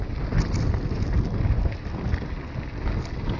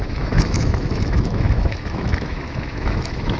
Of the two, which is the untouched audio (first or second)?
first